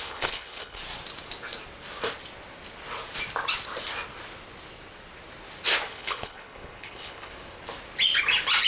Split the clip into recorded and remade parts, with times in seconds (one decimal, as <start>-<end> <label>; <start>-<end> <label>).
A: 0.0-0.8 remade; 0.8-5.9 recorded; 5.9-7.3 remade; 7.3-8.7 recorded